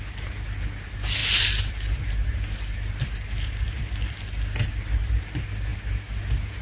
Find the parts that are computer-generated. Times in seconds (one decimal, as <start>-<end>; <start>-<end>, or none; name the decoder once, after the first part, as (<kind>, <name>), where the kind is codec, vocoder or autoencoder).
none